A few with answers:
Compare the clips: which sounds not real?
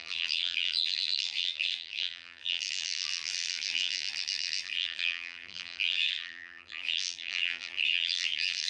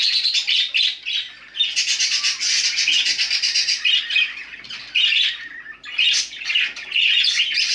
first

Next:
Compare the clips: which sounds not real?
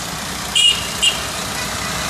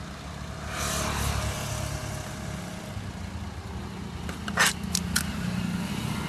first